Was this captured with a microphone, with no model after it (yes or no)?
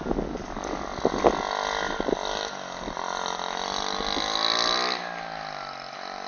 yes